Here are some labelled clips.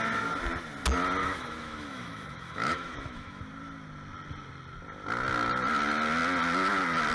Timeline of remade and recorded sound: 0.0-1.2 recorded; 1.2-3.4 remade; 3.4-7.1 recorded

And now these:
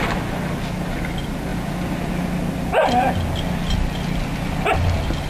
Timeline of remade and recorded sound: 0.0-5.3 recorded

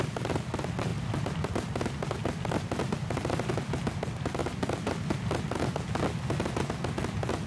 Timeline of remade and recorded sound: 0.0-7.5 recorded